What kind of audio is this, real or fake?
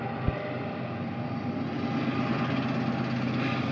real